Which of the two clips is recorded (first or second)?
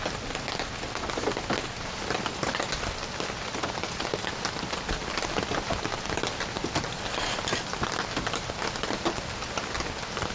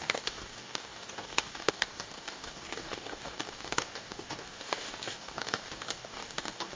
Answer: first